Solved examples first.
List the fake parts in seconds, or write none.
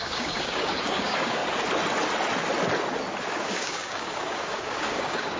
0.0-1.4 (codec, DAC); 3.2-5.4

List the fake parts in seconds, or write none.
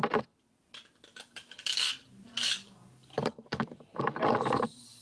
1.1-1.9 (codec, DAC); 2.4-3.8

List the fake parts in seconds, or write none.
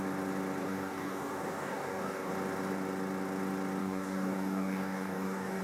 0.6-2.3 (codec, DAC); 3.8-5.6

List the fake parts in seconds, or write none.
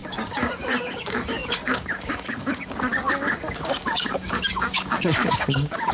0.0-5.9 (codec, DAC)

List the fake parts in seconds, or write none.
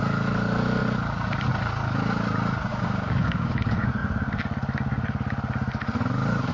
2.7-3.5 (codec, DAC)